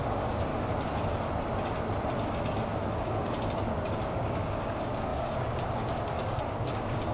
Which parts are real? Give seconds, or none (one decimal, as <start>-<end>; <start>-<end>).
0.5-2.2